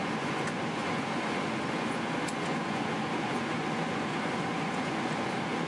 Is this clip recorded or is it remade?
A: remade